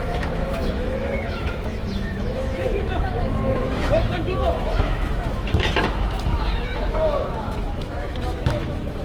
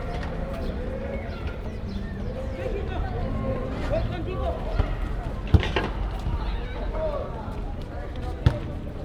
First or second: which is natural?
second